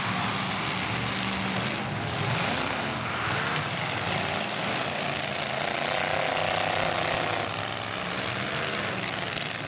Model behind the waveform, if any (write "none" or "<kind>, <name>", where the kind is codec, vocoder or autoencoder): none